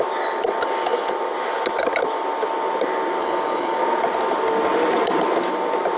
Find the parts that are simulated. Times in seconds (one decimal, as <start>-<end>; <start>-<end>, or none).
3.2-3.8